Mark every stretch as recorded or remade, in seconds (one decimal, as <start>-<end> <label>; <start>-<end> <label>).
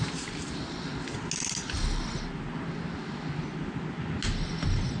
0.0-5.0 recorded